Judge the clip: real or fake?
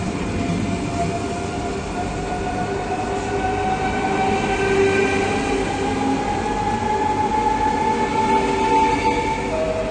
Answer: real